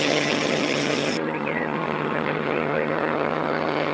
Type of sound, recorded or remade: remade